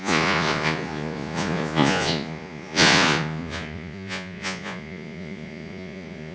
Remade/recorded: remade